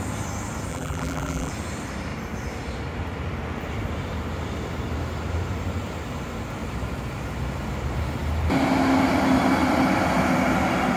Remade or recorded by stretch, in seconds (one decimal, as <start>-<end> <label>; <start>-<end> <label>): 0.0-0.7 recorded; 0.7-1.5 remade; 1.5-11.0 recorded